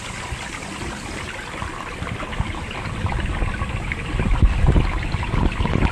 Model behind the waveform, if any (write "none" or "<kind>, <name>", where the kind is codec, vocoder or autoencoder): none